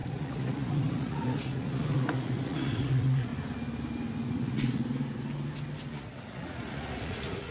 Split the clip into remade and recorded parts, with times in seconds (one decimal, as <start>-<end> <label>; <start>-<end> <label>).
0.0-3.3 remade; 3.3-4.3 recorded; 4.3-4.8 remade; 4.8-5.9 recorded; 5.9-7.5 remade